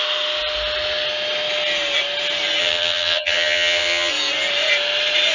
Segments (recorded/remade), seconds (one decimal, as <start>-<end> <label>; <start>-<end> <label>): 0.0-2.6 recorded; 2.6-4.1 remade; 4.1-5.3 recorded